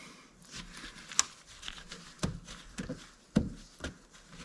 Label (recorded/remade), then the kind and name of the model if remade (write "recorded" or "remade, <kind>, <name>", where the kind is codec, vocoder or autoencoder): recorded